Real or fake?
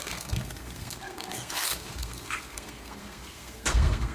fake